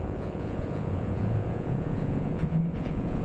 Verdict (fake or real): fake